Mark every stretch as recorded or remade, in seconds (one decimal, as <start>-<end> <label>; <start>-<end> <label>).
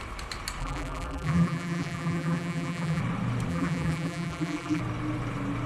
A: 0.0-0.6 recorded; 0.6-3.0 remade; 3.0-3.5 recorded; 3.5-4.8 remade; 4.8-5.7 recorded